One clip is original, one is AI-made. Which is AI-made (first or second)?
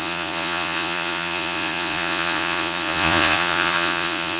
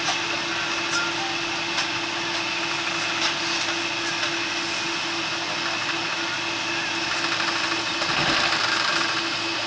first